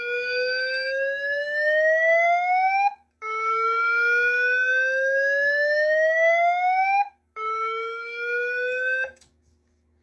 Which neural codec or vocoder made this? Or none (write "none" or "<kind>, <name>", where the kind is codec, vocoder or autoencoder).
codec, DAC